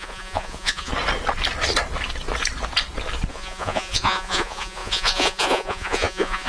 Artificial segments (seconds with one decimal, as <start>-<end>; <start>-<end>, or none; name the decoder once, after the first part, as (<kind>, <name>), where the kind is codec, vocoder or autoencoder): 0.0-0.9 (vocoder, Vocos); 3.3-6.5

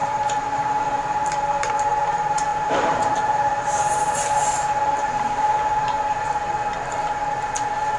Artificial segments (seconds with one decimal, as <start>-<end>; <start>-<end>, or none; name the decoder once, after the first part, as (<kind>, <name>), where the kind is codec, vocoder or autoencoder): 0.0-1.7 (vocoder, BigVGAN v2); 2.5-6.3

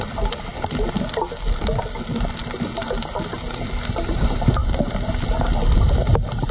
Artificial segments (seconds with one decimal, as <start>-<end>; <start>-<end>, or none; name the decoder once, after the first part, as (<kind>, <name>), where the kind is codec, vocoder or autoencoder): none

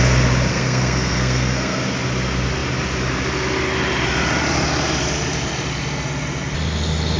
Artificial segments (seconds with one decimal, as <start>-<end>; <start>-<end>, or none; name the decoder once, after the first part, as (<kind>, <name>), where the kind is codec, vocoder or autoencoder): 0.5-1.8 (codec, SNAC)

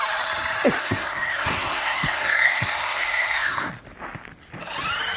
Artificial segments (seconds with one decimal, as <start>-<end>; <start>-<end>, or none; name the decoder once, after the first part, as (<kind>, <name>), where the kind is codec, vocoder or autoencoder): 0.8-3.7 (codec, SNAC)

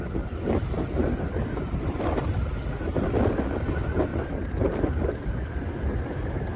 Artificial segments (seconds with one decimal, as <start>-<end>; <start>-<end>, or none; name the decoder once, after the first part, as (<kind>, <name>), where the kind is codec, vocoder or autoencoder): 4.1-5.1 (vocoder, BigVGAN v2)

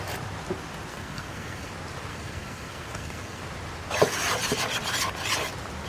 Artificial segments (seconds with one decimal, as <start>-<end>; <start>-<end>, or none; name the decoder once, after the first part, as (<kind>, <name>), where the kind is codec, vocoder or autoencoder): 0.9-1.7 (codec, SNAC); 2.1-3.4

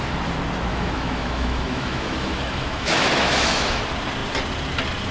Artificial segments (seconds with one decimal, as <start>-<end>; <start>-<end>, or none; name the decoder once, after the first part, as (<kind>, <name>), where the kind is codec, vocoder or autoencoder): 0.7-3.8 (autoencoder, DAC-VAE)